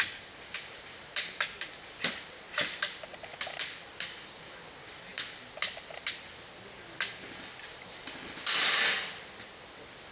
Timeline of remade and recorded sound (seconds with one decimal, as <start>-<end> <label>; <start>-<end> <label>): 0.0-10.1 recorded